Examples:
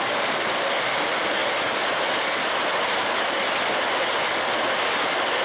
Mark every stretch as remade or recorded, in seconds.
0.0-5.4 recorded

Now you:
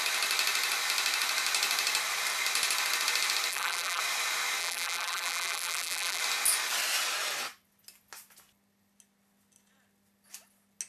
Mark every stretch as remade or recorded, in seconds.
0.0-3.5 recorded; 3.5-4.0 remade; 4.0-4.6 recorded; 4.6-6.2 remade; 6.2-10.9 recorded

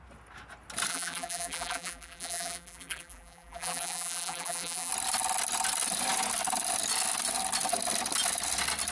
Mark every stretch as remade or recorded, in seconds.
0.0-0.9 recorded; 0.9-4.9 remade; 4.9-8.9 recorded